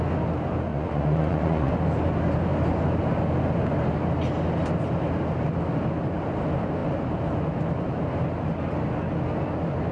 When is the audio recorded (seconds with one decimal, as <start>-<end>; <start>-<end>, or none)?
0.0-0.7; 1.7-9.9